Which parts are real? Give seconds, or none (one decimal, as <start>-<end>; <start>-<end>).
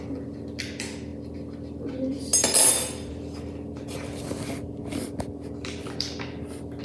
0.0-6.8